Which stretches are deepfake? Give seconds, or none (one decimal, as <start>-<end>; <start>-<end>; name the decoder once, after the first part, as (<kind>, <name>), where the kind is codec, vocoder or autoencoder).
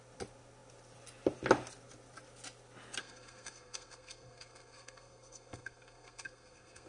3.0-6.9 (codec, SNAC)